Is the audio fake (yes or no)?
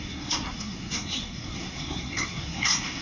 yes